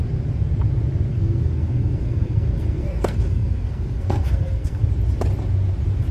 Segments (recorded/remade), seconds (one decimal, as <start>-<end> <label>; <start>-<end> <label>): 0.0-1.1 recorded; 1.1-4.8 remade; 4.8-6.1 recorded